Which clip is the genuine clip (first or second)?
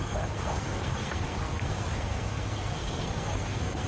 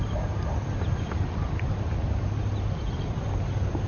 second